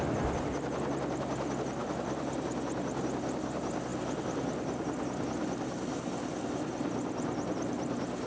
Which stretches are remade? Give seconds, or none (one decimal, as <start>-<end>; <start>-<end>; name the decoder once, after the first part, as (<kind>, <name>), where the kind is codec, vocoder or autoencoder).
1.8-2.4 (vocoder, BigVGAN v2)